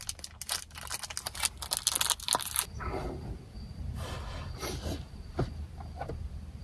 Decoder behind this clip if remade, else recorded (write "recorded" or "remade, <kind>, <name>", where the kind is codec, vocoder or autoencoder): recorded